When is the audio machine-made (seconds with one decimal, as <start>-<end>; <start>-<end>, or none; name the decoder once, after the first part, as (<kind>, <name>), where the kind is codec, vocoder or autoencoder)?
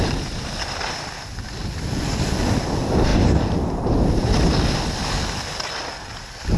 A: none